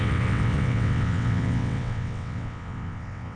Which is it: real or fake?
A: fake